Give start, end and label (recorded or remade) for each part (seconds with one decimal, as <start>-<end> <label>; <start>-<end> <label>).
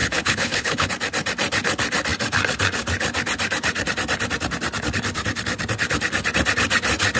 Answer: 0.0-0.9 remade; 0.9-7.2 recorded